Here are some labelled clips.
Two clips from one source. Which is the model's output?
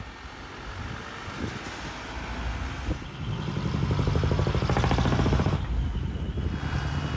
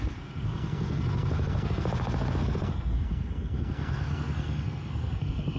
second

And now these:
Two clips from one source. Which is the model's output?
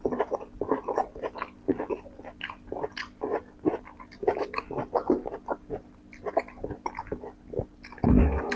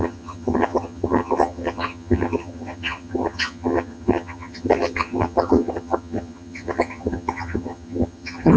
second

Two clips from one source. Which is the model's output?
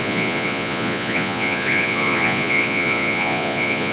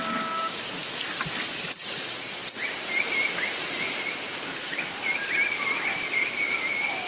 first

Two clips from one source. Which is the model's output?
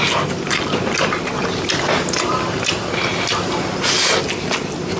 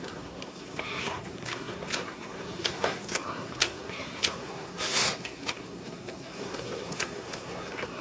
second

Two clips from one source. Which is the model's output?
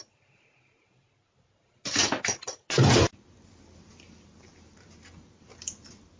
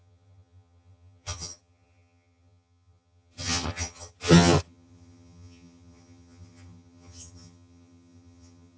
second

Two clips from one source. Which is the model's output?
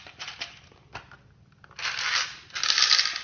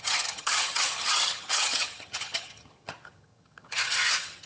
second